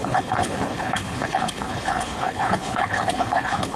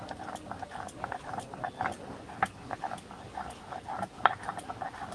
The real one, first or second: second